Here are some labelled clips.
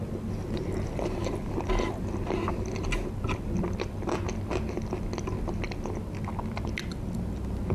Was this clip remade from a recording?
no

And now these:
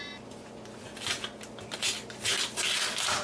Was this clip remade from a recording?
no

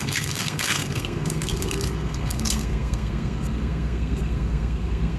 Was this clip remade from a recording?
yes